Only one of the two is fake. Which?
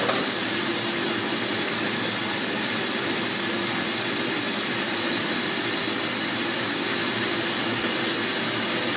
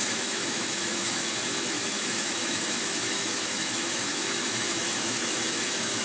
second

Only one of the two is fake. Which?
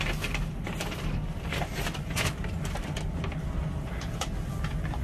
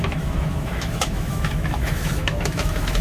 second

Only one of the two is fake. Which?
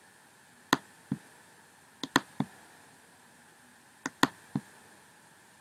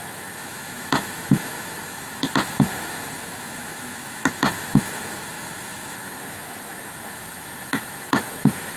second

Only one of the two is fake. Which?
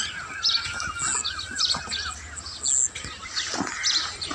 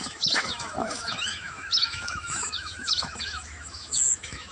second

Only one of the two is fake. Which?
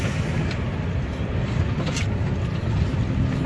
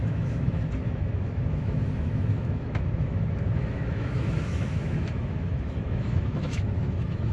second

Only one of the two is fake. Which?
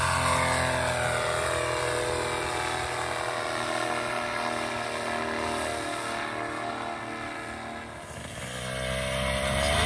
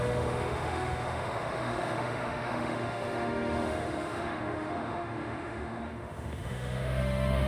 second